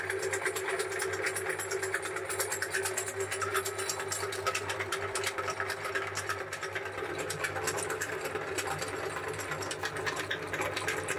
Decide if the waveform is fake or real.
real